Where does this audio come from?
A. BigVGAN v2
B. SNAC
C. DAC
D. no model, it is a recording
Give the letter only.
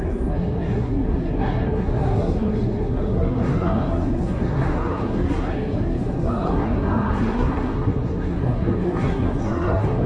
B